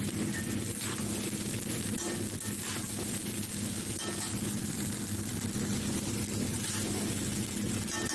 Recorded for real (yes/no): yes